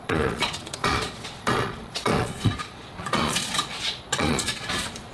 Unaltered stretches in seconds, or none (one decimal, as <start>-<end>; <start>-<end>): none